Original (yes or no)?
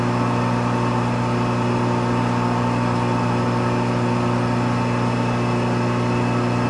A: yes